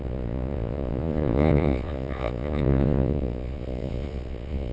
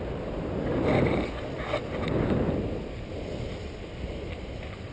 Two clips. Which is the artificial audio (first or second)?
first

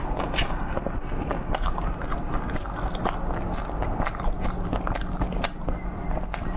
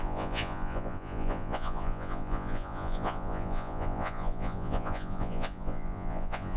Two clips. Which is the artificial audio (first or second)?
second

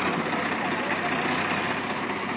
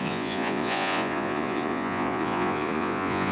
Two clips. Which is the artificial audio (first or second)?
second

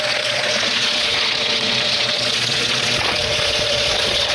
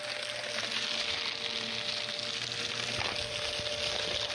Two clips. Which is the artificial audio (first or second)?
first